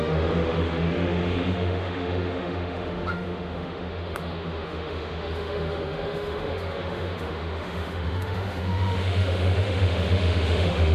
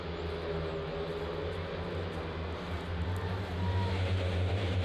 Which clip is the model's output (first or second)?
first